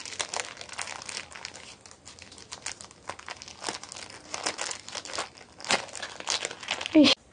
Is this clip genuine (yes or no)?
yes